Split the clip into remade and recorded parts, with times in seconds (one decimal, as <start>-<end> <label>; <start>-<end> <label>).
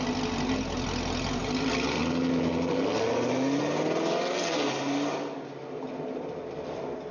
0.0-7.1 recorded